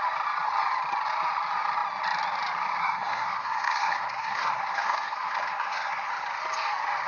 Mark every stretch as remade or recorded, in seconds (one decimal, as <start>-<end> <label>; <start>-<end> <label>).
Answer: 0.0-2.8 recorded; 2.8-6.1 remade; 6.1-7.1 recorded